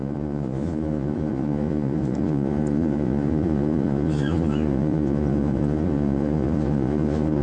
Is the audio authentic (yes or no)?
no